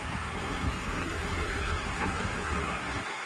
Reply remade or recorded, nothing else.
remade